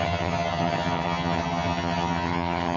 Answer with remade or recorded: remade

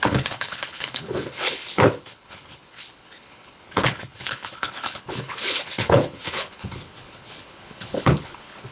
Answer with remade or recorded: remade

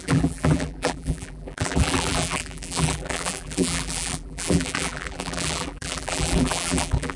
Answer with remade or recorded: remade